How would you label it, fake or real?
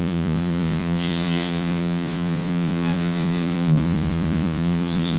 fake